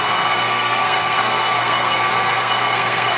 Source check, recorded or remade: remade